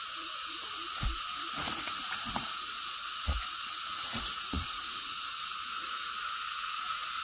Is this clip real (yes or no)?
no